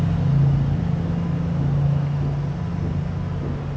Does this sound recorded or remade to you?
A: recorded